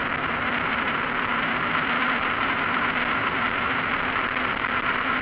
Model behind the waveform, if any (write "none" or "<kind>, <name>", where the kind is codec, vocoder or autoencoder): vocoder, BigVGAN v2